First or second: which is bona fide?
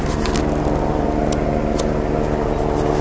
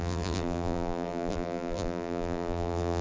first